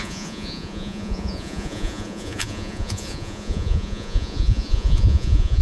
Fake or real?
fake